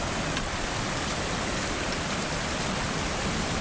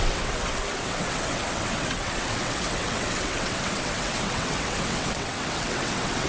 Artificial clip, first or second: second